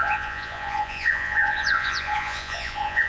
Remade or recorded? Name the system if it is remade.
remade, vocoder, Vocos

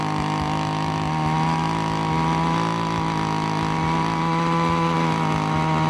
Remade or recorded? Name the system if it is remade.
recorded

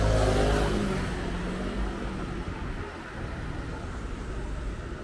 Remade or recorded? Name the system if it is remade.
recorded